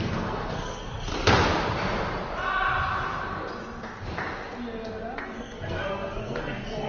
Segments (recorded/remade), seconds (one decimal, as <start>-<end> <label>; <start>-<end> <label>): 0.0-1.1 remade; 1.1-5.2 recorded; 5.2-6.9 remade

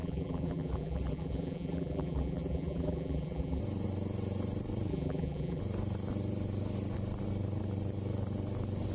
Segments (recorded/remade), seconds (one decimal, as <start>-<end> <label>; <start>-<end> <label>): 0.0-3.6 remade; 3.6-4.9 recorded; 4.9-5.6 remade; 5.6-8.9 recorded

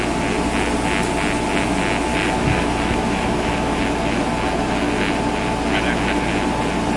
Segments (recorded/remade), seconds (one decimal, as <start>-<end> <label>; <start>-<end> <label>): 0.0-2.1 recorded; 2.1-3.8 remade; 3.8-7.0 recorded

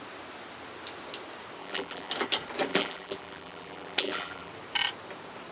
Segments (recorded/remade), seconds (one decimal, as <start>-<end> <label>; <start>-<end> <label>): 0.0-1.6 recorded; 1.6-2.1 remade; 2.1-2.7 recorded; 2.7-4.5 remade; 4.5-5.5 recorded

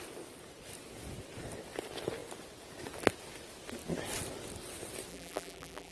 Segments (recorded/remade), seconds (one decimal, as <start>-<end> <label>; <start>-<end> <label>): 0.0-5.1 recorded; 5.1-5.9 remade

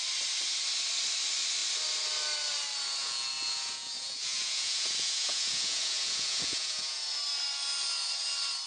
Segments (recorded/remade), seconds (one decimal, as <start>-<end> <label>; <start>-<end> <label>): 0.0-3.0 recorded; 3.0-7.1 remade; 7.1-8.7 recorded

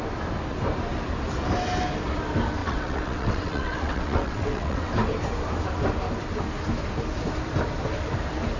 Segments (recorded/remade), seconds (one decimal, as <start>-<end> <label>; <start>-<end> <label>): 0.0-2.6 recorded; 2.6-4.9 remade; 4.9-8.6 recorded

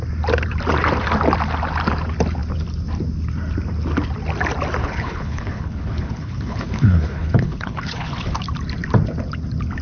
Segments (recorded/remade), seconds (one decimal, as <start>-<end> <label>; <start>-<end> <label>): 0.0-4.8 recorded; 4.8-8.4 remade; 8.4-9.8 recorded